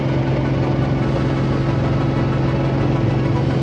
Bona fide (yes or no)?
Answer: yes